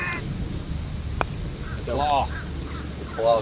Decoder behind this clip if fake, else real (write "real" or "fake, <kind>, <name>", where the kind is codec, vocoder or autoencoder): real